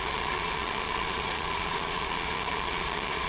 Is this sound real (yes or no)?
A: no